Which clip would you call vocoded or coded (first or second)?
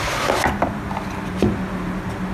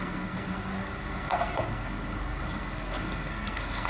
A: second